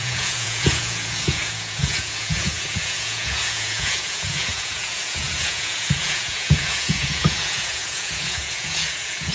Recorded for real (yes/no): no